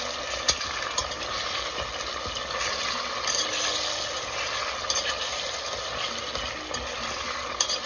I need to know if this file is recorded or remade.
recorded